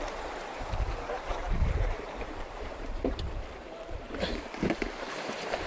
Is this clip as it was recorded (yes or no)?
no